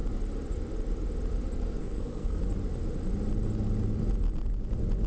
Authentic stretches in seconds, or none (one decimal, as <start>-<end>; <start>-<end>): 0.0-1.8; 2.4-5.1